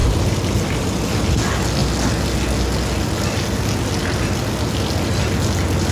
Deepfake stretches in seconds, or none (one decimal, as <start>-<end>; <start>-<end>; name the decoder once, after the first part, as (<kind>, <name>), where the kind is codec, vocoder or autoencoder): none